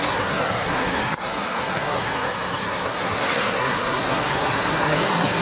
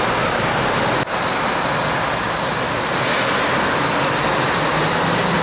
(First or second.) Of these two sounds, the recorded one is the second